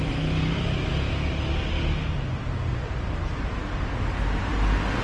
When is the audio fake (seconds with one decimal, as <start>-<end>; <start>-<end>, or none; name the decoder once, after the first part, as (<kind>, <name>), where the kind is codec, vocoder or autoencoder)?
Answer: none